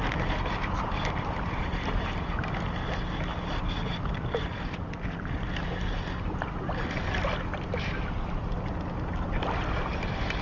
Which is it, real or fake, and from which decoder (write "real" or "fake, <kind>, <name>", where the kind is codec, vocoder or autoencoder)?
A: fake, vocoder, BigVGAN v2